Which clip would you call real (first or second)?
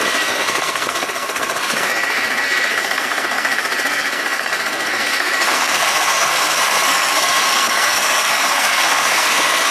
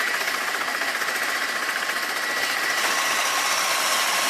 second